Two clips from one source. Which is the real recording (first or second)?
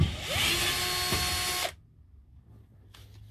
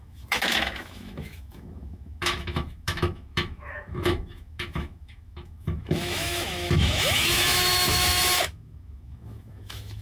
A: first